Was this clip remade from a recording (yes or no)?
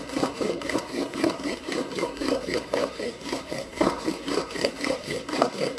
yes